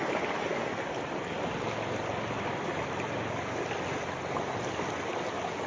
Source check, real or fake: real